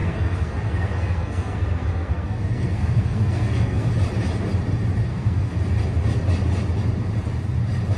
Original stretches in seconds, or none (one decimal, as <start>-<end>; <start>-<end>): 3.9-5.1; 5.6-8.0